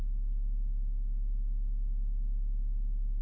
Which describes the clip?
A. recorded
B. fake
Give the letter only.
A